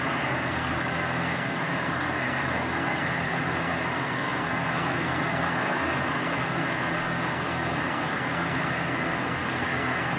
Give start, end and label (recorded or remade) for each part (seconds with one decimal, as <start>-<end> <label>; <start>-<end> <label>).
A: 0.0-10.2 remade